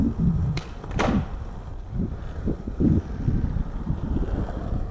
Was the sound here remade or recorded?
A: remade